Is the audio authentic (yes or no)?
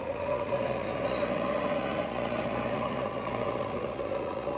no